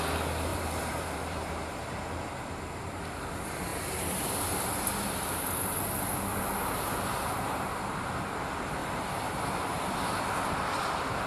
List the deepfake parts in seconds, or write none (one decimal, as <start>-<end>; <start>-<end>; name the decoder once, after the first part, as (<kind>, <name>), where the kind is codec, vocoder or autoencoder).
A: 0.5-1.5 (vocoder, BigVGAN v2); 6.3-7.8; 8.8-9.4